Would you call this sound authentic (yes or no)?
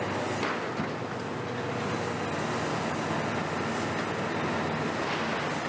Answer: yes